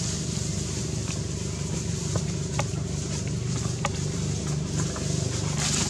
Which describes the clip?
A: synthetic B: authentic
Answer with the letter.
B